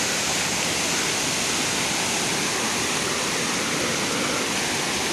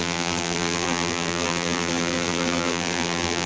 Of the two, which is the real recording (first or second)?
first